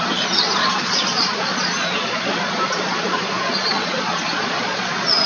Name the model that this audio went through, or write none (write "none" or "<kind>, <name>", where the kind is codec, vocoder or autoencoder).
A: vocoder, Vocos